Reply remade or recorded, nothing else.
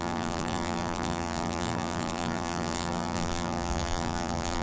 remade